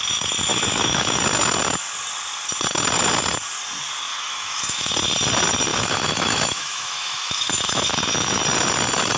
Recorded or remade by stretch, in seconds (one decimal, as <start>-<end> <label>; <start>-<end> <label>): 0.0-0.5 recorded; 0.5-1.2 remade; 1.2-4.1 recorded; 4.1-4.9 remade; 4.9-5.7 recorded; 5.7-8.4 remade; 8.4-9.2 recorded

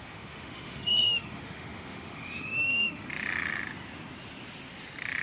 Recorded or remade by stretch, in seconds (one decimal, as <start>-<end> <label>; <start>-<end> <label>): 0.0-3.1 remade; 3.1-5.2 recorded